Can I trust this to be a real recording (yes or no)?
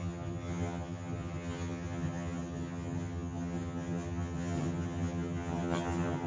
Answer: no